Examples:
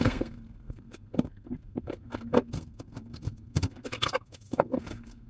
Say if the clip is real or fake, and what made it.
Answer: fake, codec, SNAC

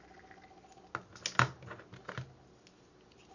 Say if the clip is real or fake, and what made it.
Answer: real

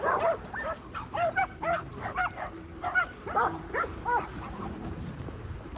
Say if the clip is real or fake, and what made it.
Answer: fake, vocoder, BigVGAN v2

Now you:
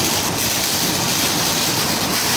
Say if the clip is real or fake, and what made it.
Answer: fake, vocoder, BigVGAN v2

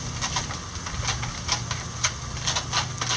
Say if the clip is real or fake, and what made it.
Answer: real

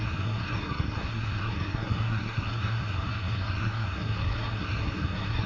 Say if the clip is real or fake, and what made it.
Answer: fake, codec, SNAC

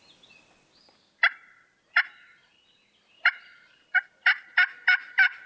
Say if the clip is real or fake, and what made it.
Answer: real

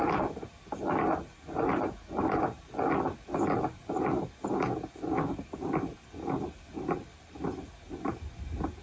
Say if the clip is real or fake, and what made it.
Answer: real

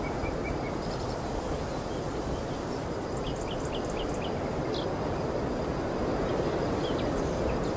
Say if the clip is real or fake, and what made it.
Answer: real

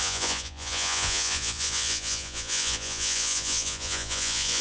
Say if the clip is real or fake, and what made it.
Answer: fake, vocoder, Vocos